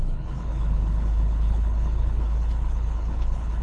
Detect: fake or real fake